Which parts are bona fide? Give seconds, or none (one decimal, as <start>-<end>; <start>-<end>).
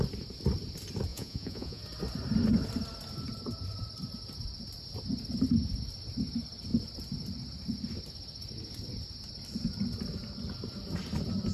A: 0.0-1.1; 1.8-11.5